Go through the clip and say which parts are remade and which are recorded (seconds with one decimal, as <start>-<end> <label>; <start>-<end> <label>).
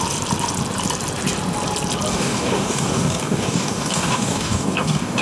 0.0-2.1 recorded; 2.1-5.2 remade